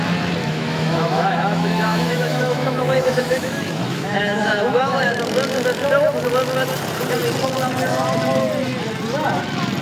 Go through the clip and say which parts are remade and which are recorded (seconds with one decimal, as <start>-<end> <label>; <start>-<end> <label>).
0.0-0.4 recorded; 0.4-5.2 remade; 5.2-9.8 recorded